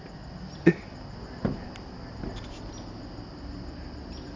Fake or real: real